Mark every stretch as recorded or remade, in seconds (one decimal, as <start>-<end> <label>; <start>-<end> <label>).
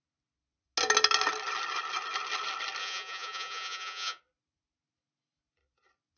0.0-2.8 recorded; 2.8-4.2 remade; 4.2-6.2 recorded